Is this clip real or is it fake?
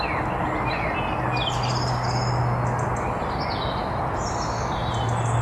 real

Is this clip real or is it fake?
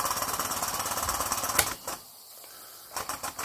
real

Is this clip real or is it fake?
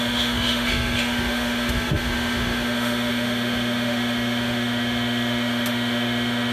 fake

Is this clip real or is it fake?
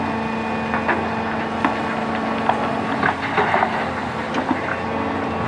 real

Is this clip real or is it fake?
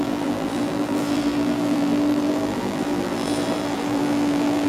fake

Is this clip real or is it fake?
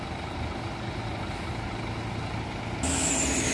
real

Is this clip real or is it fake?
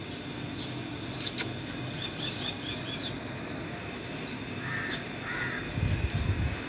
real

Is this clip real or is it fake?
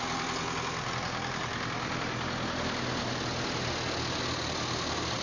real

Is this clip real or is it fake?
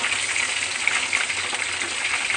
real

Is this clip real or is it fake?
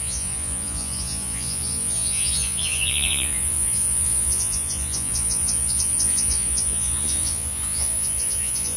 fake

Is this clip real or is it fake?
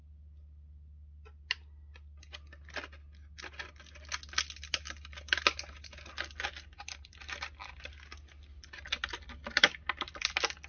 real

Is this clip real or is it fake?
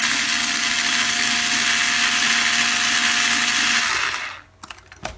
real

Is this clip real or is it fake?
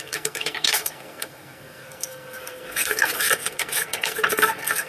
fake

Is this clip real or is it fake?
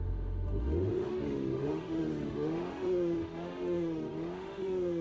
fake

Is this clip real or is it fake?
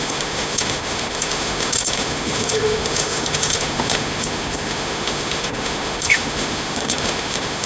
fake